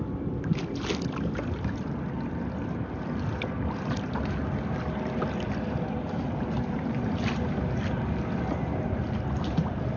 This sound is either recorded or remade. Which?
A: recorded